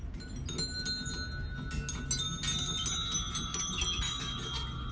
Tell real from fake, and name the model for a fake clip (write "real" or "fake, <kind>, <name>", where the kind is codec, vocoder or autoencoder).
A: real